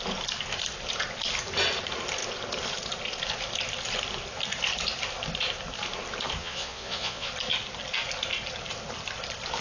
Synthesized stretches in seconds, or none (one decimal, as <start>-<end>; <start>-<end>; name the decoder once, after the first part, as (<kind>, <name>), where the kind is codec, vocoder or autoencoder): 6.4-7.3 (vocoder, Vocos)